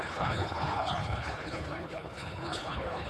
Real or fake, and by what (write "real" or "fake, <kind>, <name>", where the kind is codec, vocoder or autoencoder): fake, codec, HILCodec